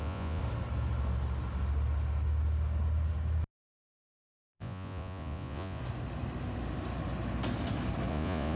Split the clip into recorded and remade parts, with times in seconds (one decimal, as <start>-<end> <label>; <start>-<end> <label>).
0.0-0.4 remade; 0.4-3.9 recorded; 3.9-5.8 remade; 5.8-8.1 recorded; 8.1-8.6 remade